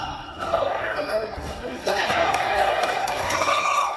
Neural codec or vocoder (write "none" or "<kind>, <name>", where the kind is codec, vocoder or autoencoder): codec, SNAC